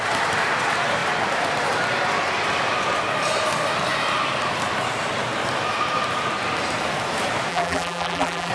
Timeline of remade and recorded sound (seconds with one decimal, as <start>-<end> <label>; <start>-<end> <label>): 0.0-7.5 recorded; 7.5-8.5 remade